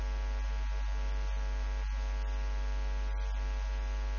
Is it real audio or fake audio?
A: real